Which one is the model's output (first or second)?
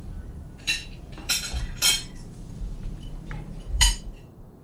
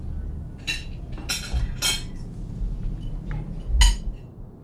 first